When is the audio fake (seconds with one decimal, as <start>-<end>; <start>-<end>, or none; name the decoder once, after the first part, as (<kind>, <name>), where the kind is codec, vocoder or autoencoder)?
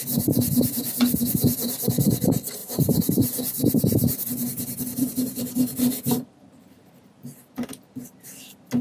2.6-7.4 (vocoder, BigVGAN v2)